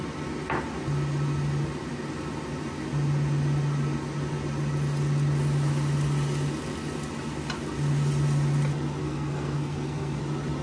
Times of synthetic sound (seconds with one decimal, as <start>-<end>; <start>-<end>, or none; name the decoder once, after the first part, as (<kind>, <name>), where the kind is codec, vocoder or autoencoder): 9.0-10.2 (codec, SNAC)